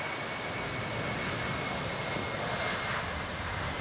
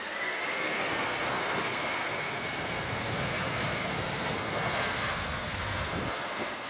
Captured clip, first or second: first